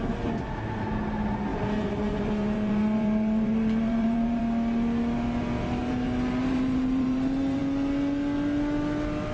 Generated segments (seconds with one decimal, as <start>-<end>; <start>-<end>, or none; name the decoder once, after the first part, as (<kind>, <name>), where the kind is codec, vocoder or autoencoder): 1.5-4.4 (vocoder, BigVGAN v2); 5.8-7.6